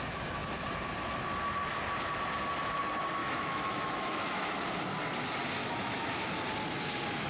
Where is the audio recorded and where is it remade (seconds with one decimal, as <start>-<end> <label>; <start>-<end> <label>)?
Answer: 0.0-3.2 recorded; 3.2-4.5 remade; 4.5-5.6 recorded; 5.6-6.1 remade; 6.1-7.3 recorded